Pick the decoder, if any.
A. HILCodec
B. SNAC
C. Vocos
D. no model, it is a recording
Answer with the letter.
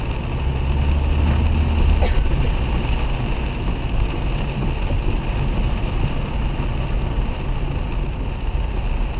D